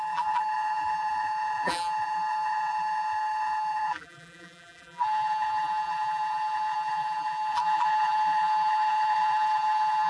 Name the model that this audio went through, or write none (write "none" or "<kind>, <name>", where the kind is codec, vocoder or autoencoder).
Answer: vocoder, BigVGAN v2